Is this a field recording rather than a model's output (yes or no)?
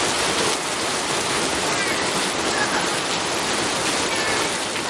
yes